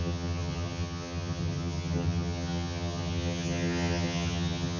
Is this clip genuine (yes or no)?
no